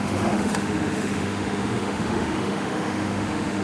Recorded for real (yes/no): no